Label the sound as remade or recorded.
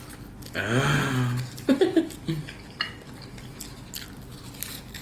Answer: recorded